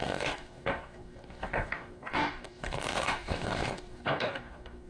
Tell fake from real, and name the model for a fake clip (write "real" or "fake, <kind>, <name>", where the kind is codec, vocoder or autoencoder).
fake, codec, DAC